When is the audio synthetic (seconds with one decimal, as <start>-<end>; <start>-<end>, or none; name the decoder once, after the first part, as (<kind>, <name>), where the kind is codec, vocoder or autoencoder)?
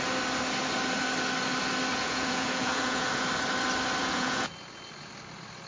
1.9-3.3 (vocoder, Vocos); 4.0-4.5